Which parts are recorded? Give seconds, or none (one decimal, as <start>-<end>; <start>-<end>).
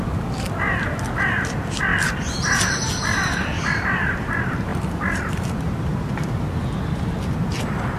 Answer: 0.0-4.7; 6.7-8.0